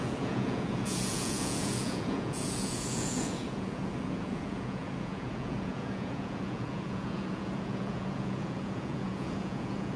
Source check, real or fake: fake